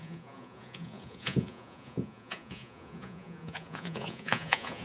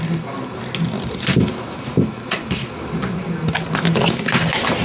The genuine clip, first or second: second